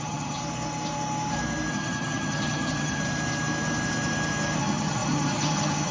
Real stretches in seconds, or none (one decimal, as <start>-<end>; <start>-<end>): 0.4-1.7; 3.0-4.6